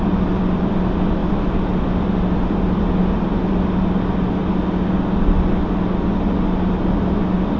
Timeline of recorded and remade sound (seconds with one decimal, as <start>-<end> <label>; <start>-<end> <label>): 0.0-7.6 recorded